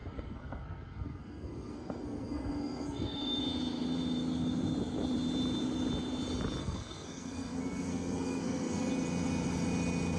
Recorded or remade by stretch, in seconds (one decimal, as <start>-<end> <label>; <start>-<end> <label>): 0.0-3.4 remade; 3.4-6.6 recorded; 6.6-8.9 remade; 8.9-10.2 recorded